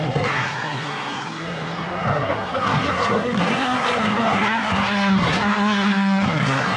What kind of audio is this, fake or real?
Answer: fake